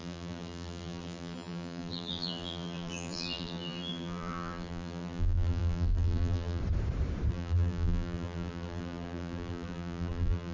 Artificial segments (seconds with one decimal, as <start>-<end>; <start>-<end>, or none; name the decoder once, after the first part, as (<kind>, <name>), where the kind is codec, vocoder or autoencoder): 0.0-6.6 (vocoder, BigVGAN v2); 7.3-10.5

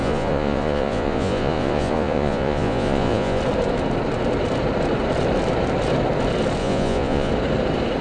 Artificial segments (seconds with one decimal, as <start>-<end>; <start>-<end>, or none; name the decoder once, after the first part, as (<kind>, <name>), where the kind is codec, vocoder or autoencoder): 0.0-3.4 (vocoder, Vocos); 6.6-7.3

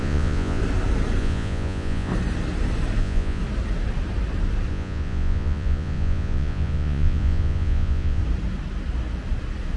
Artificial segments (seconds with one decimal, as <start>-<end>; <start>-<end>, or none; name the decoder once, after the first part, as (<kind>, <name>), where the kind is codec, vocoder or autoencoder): 0.0-0.6 (vocoder, Vocos); 1.2-2.1; 3.0-3.4; 4.7-8.2